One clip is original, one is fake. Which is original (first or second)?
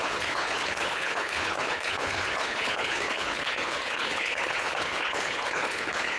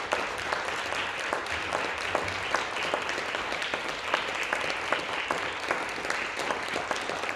second